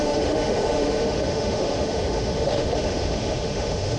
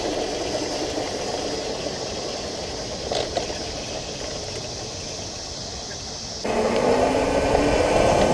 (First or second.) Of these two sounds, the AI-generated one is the first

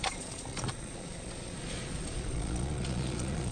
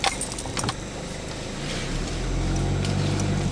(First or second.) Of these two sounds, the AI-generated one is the first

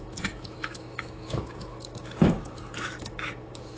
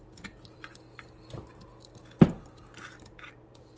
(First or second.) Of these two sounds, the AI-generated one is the first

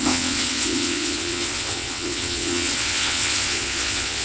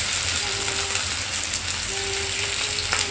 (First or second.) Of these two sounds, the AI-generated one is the first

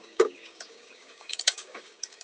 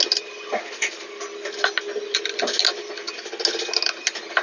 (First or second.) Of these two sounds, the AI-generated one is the first